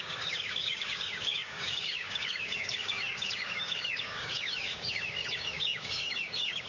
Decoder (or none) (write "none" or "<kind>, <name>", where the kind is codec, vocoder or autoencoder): codec, DAC